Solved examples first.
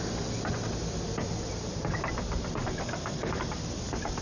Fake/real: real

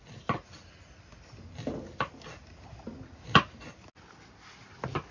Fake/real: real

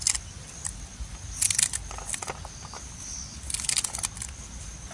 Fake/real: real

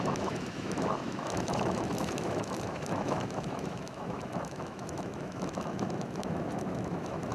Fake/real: fake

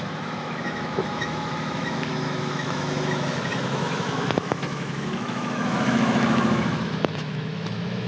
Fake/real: fake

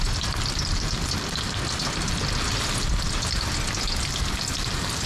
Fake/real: real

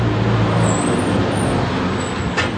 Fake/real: real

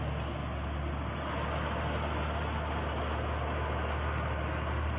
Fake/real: real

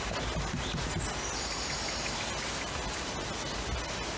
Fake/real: real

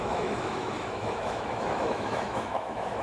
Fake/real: fake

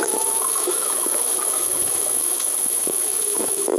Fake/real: fake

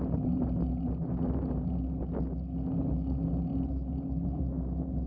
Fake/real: real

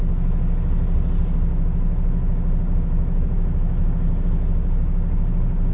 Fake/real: real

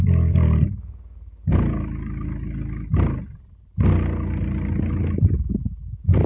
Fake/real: real